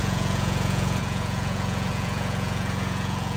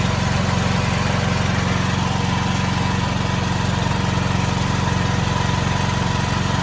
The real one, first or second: second